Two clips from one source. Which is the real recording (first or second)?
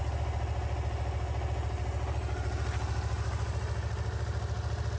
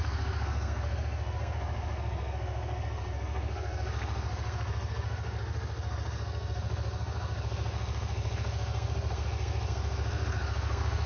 first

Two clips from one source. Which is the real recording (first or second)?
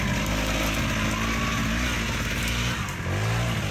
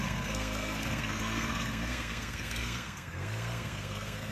first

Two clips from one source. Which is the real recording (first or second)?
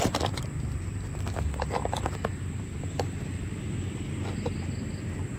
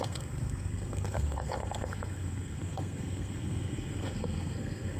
first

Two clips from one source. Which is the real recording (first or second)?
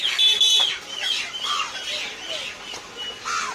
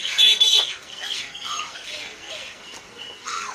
first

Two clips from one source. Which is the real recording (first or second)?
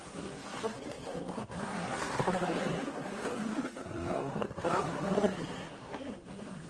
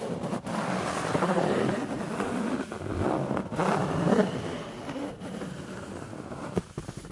second